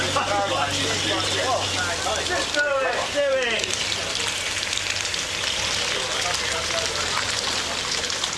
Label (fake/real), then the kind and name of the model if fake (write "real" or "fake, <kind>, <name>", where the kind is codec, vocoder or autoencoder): real